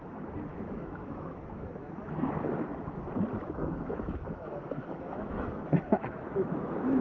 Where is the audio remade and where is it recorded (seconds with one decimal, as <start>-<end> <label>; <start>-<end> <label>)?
0.0-0.5 recorded; 0.5-2.3 remade; 2.3-3.4 recorded; 3.4-7.0 remade